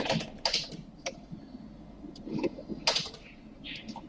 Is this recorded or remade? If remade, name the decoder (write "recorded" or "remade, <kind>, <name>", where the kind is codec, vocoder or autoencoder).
recorded